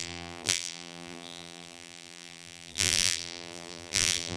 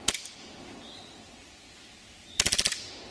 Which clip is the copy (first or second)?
first